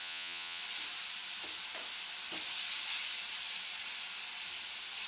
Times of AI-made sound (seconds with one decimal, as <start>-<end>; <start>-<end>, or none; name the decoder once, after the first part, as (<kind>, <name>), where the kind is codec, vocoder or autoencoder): 0.0-0.6 (vocoder, Vocos)